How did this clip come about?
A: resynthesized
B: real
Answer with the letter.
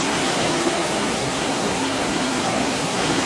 A